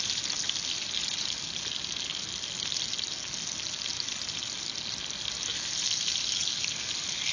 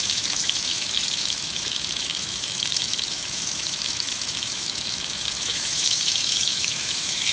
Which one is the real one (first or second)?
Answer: first